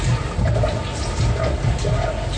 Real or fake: real